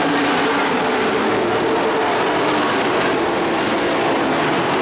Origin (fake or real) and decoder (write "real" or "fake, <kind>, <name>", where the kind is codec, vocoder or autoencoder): real